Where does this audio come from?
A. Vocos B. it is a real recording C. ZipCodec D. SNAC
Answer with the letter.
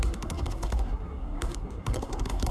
D